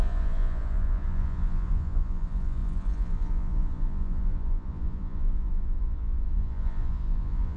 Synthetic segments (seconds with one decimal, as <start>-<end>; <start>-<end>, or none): 0.0-7.6